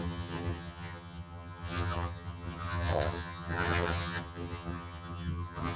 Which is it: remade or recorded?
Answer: remade